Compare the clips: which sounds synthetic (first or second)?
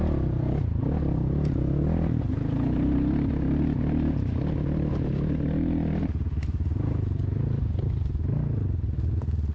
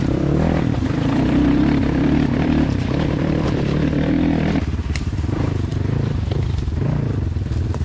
second